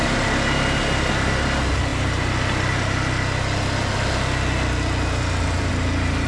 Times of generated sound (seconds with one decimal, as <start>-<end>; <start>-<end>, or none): none